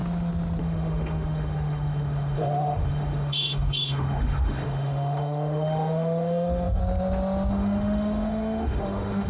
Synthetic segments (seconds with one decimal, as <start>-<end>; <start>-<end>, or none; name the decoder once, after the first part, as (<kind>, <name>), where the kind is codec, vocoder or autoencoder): 0.6-6.8 (autoencoder, DAC-VAE); 7.5-9.3

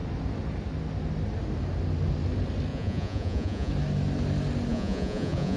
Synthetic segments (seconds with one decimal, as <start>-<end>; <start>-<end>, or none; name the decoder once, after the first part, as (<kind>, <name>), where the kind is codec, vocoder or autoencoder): 2.7-3.7 (vocoder, Vocos); 4.7-5.6

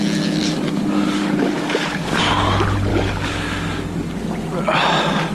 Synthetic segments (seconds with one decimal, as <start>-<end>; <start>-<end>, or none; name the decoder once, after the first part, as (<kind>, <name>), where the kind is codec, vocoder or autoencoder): 0.4-2.5 (codec, DAC); 2.9-4.2

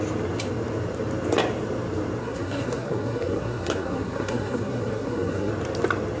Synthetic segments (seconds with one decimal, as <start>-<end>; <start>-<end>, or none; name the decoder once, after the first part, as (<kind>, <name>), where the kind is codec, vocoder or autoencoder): 2.2-5.5 (codec, SNAC)

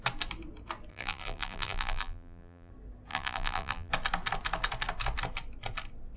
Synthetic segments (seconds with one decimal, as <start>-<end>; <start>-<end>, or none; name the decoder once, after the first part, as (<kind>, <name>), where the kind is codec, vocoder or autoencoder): 0.9-2.7 (vocoder, BigVGAN v2); 3.1-3.9

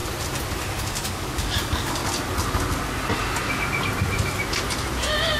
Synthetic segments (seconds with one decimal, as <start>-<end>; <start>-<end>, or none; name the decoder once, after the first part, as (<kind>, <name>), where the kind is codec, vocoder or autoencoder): 0.8-2.0 (codec, DAC)